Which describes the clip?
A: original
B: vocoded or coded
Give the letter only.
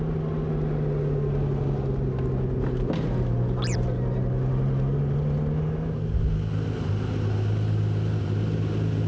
A